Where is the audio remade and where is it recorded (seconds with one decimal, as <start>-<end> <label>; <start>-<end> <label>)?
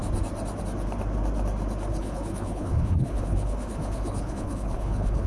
0.0-1.9 recorded; 1.9-5.3 remade